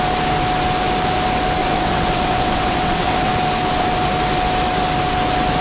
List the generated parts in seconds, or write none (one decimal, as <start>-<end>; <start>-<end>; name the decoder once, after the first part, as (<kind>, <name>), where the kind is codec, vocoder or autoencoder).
1.6-3.3 (vocoder, WaveNeXt)